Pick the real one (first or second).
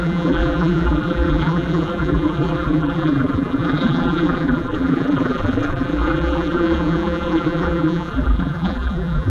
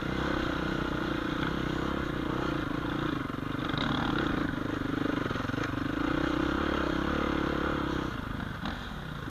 second